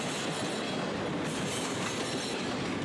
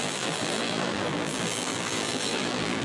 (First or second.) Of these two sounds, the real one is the first